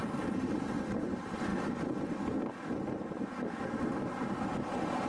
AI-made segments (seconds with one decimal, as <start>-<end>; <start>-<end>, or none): 0.8-1.5; 4.6-5.1